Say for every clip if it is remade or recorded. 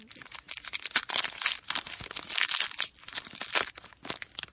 recorded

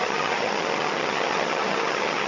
remade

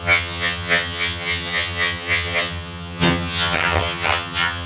remade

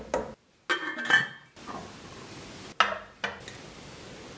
recorded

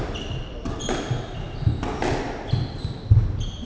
recorded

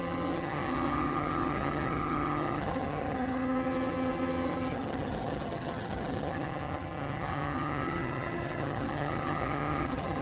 remade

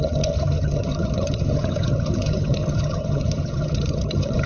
remade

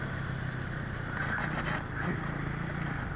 recorded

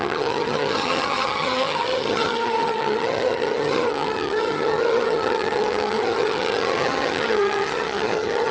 remade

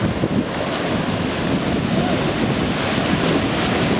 recorded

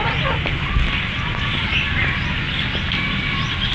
recorded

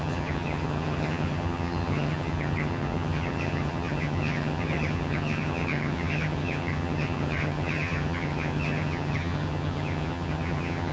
remade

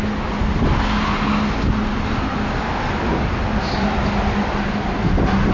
recorded